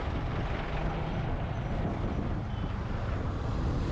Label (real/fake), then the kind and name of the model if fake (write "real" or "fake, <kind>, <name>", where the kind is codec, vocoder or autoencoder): fake, vocoder, BigVGAN v2